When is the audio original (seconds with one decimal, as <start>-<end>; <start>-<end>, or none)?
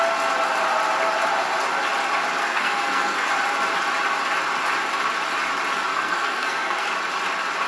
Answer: 0.0-2.4; 3.3-5.9; 6.9-7.7